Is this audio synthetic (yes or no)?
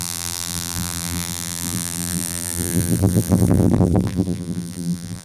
yes